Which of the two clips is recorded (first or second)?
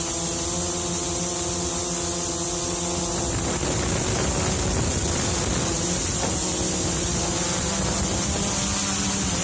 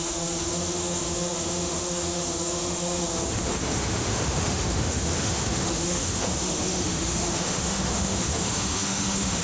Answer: first